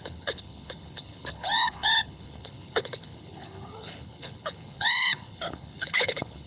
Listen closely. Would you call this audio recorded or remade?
remade